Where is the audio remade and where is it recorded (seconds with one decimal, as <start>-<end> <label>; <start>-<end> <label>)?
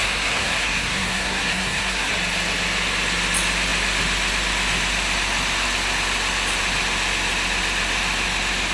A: 0.0-2.1 remade; 2.1-8.7 recorded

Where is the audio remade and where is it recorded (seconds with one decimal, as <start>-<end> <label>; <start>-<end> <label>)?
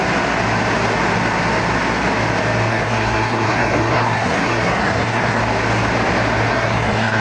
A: 0.0-2.7 recorded; 2.7-5.4 remade; 5.4-6.5 recorded; 6.5-7.2 remade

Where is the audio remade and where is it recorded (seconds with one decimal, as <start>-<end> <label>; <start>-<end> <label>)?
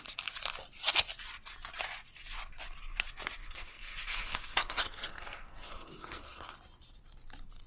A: 0.0-3.4 recorded; 3.4-6.5 remade; 6.5-7.7 recorded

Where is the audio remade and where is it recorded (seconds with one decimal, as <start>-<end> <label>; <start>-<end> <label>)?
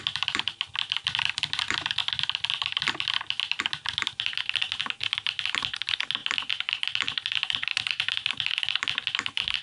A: 0.0-9.6 recorded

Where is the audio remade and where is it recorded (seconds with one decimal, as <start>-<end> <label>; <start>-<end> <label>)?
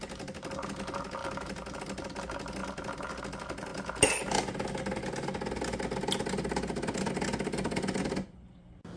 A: 0.0-9.0 recorded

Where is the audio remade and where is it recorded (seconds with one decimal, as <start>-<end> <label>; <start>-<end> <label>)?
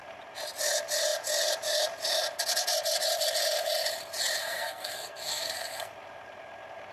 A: 0.0-4.4 recorded; 4.4-5.9 remade; 5.9-6.9 recorded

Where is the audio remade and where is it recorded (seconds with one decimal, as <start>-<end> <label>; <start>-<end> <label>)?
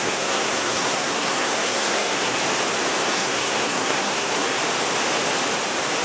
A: 0.0-2.4 remade; 2.4-3.0 recorded; 3.0-4.6 remade; 4.6-6.0 recorded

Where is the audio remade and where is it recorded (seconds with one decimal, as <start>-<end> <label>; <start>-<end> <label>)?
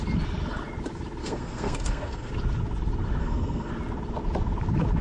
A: 0.0-1.2 recorded; 1.2-2.3 remade; 2.3-3.2 recorded; 3.2-3.7 remade; 3.7-5.0 recorded